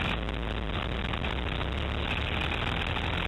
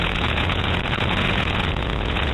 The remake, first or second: second